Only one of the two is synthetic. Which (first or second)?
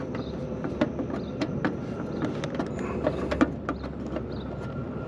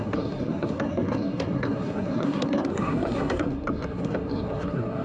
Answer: second